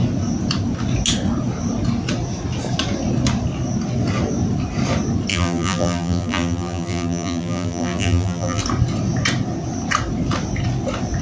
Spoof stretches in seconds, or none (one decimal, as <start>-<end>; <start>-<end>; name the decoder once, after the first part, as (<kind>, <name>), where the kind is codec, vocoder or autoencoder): 5.3-8.6 (vocoder, BigVGAN v2)